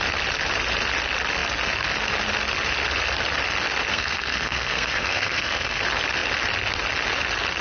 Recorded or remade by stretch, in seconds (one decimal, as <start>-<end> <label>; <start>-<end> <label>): 0.0-3.9 recorded; 3.9-5.8 remade; 5.8-7.6 recorded